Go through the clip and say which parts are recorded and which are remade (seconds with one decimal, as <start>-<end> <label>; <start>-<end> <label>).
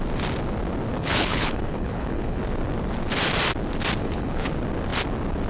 0.0-0.9 recorded; 0.9-2.4 remade; 2.4-4.0 recorded; 4.0-4.5 remade; 4.5-5.5 recorded